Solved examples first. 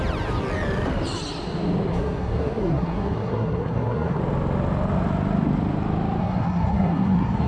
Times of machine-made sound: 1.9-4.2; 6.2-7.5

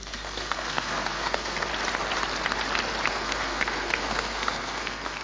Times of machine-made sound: 0.0-1.7; 3.1-5.2

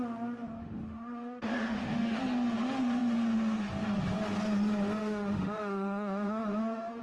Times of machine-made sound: 0.6-2.2; 5.0-7.0

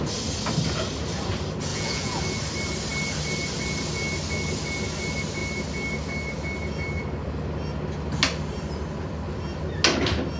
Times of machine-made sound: 1.7-2.2

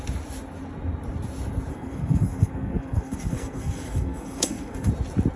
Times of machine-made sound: 1.7-4.9

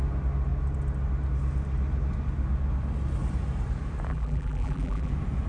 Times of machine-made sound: 4.1-5.1